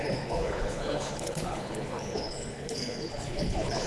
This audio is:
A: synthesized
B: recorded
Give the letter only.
A